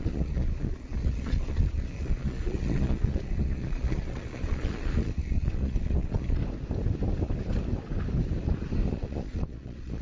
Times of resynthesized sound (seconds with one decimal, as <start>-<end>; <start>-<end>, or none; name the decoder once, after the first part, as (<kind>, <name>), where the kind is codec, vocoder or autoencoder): 0.0-6.4 (vocoder, Vocos); 8.9-10.0